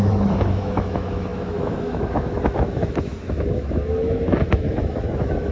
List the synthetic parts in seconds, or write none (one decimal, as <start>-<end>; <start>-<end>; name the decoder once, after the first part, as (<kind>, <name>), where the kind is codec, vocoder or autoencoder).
0.0-5.5 (autoencoder, DAC-VAE)